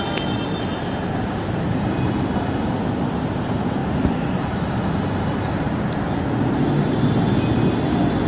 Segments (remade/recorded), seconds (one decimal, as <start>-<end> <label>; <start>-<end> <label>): 0.0-8.3 recorded